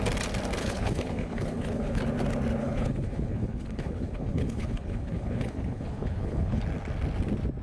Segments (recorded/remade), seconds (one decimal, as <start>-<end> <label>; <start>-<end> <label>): 0.0-0.6 recorded; 0.6-2.0 remade; 2.0-2.6 recorded; 2.6-6.6 remade; 6.6-7.6 recorded